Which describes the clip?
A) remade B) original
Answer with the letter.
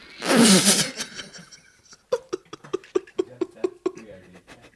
B